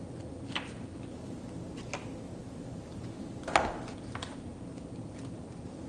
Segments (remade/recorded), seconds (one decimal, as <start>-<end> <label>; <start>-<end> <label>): 0.0-5.9 recorded